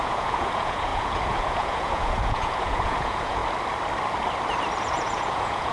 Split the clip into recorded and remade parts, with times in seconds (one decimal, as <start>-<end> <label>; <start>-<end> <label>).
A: 0.0-3.4 remade; 3.4-4.8 recorded; 4.8-5.7 remade